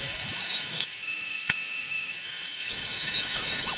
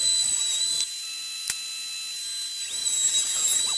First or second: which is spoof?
first